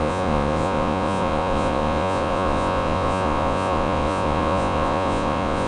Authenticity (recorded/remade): remade